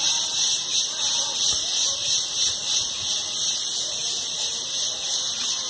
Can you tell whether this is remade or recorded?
recorded